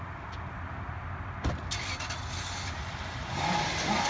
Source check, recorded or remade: recorded